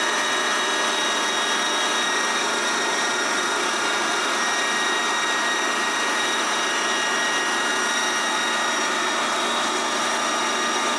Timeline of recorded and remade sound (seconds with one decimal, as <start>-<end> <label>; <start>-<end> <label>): 0.0-11.0 recorded